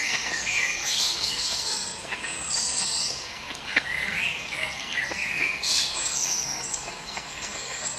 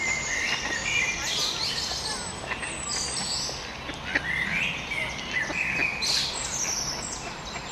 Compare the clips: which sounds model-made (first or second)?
first